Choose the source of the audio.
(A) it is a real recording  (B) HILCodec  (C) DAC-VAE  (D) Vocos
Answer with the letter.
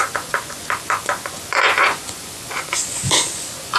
D